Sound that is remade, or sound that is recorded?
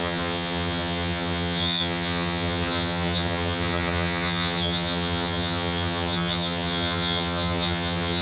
remade